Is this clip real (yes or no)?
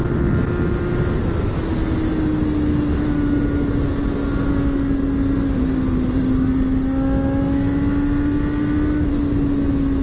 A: yes